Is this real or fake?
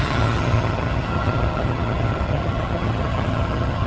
fake